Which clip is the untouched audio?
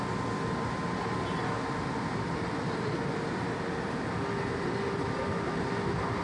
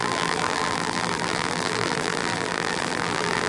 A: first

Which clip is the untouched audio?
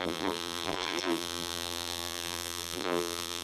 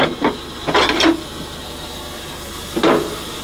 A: second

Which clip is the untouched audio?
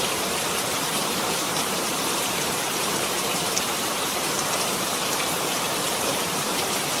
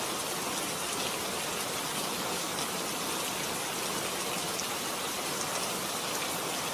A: second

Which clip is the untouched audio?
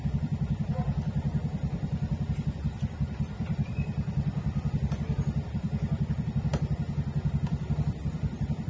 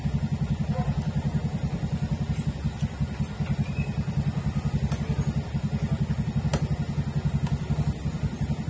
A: second